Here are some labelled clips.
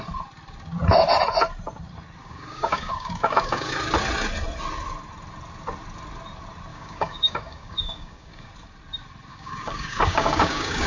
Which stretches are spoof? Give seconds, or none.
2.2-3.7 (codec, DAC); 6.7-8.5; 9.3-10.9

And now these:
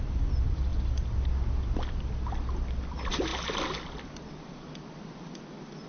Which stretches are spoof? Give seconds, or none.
none

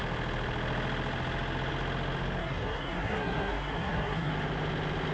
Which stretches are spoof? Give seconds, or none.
2.4-4.3 (codec, SNAC)

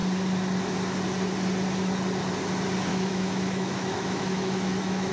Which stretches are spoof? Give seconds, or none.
2.9-5.1 (autoencoder, DAC-VAE)

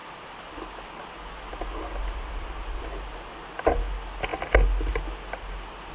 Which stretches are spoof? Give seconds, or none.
none

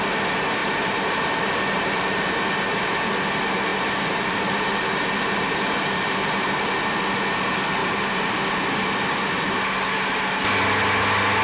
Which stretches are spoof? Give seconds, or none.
0.6-2.3 (vocoder, BigVGAN v2); 3.7-6.7; 7.8-8.4

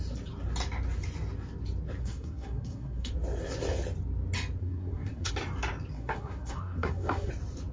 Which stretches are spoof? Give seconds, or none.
2.0-3.1 (codec, SNAC); 4.6-5.3; 5.9-7.3

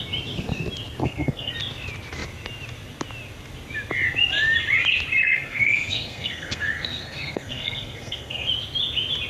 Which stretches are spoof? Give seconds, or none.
1.0-1.5 (codec, SNAC); 5.2-8.5